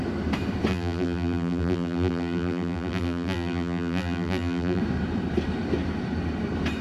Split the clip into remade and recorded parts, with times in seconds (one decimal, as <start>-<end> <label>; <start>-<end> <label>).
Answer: 0.0-0.7 recorded; 0.7-4.8 remade; 4.8-6.8 recorded